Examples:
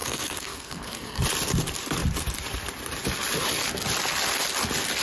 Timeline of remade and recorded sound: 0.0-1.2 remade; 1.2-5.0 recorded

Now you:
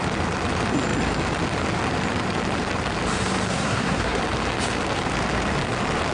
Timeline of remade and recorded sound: 0.0-3.5 recorded; 3.5-4.2 remade; 4.2-6.1 recorded

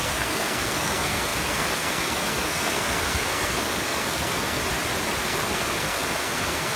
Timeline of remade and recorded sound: 0.0-4.6 remade; 4.6-5.2 recorded; 5.2-6.8 remade

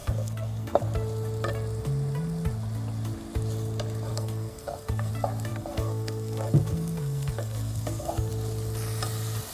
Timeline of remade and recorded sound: 0.0-0.8 remade; 0.8-4.1 recorded; 4.1-5.1 remade; 5.1-5.5 recorded; 5.5-8.3 remade; 8.3-9.5 recorded

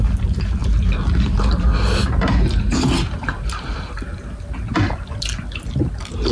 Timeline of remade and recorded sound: 0.0-6.3 recorded

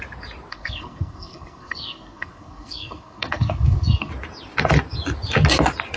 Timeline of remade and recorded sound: 0.0-0.5 recorded; 0.5-4.1 remade; 4.1-6.0 recorded

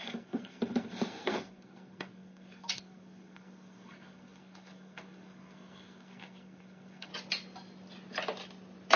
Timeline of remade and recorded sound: 0.0-7.1 remade; 7.1-9.0 recorded